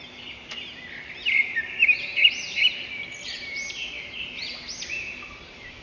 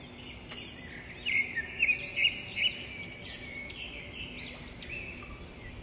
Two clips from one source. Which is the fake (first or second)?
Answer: first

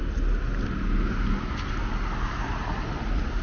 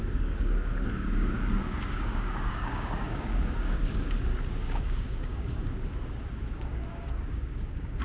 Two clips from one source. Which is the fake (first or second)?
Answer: second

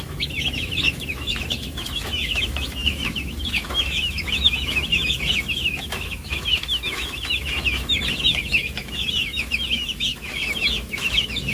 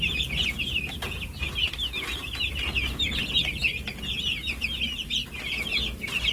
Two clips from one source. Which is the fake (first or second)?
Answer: first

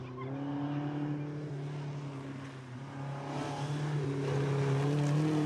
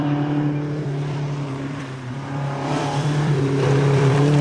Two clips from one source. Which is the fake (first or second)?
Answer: second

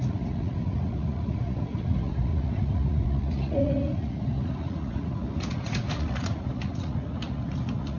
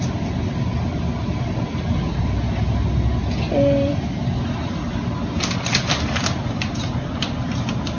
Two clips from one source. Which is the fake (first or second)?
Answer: first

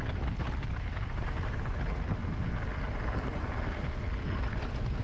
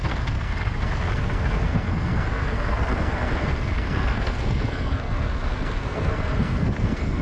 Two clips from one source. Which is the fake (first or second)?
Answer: second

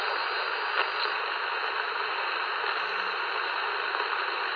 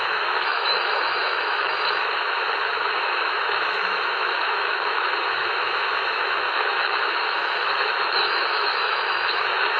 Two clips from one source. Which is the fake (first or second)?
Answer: second